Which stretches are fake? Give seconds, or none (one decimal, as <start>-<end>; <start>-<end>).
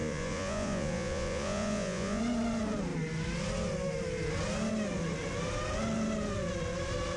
0.0-2.2